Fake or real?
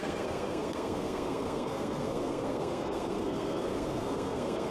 fake